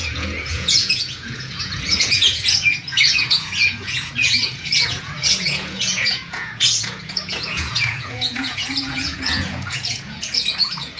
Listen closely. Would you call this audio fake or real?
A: fake